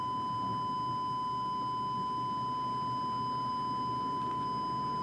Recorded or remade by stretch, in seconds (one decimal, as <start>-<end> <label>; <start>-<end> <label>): 0.0-5.0 recorded